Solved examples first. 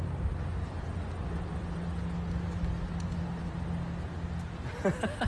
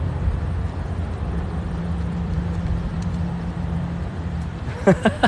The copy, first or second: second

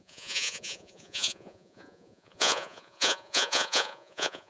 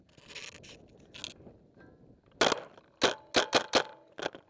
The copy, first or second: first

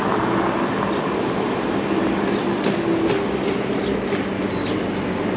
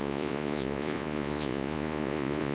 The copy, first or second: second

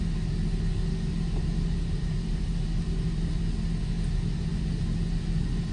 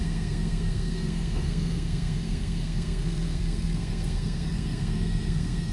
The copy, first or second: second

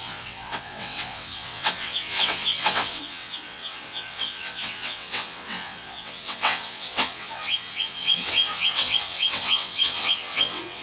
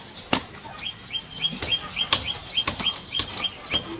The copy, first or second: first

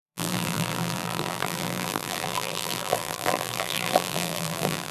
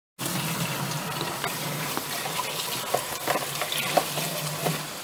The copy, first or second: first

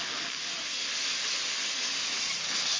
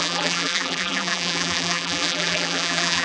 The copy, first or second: second